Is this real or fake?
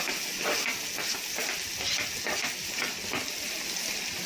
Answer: real